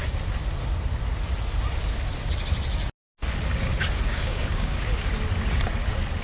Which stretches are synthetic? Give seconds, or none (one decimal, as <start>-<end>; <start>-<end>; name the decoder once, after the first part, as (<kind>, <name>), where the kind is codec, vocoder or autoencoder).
4.1-5.1 (codec, DAC)